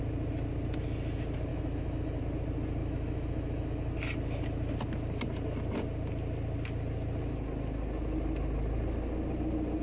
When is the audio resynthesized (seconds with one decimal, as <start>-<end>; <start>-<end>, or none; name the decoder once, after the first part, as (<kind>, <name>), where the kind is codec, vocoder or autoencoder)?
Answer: 1.5-2.2 (autoencoder, DAC-VAE); 2.8-3.9